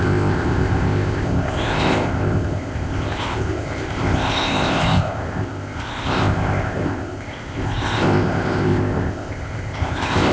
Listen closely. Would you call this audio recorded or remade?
remade